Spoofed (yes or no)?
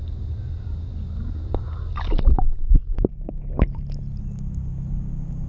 no